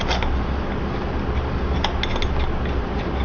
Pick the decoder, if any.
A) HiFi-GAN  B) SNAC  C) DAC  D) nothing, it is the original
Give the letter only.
D